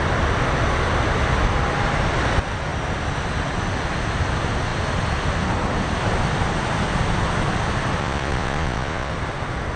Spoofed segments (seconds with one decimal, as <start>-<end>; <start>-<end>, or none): 8.0-9.1